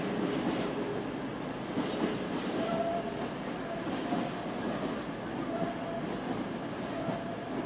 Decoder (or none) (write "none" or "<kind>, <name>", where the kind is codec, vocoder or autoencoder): none